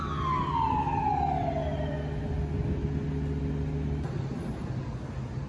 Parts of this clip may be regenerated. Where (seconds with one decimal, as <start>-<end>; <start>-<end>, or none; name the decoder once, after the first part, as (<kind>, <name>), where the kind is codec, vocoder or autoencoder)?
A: none